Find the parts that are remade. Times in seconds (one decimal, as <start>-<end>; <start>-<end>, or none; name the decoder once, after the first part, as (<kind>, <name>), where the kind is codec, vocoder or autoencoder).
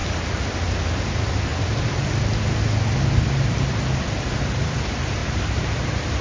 5.2-6.2 (vocoder, BigVGAN v2)